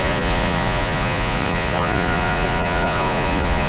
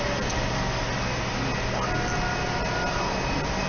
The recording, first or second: second